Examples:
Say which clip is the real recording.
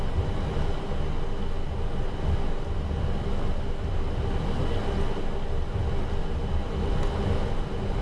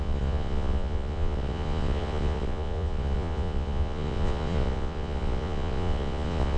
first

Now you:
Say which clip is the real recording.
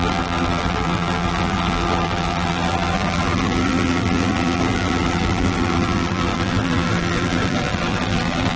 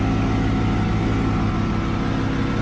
second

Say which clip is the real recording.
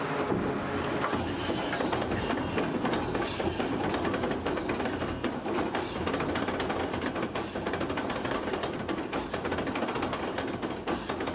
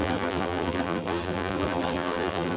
first